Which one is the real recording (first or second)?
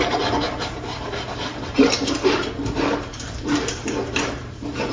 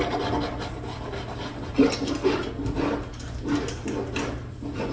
second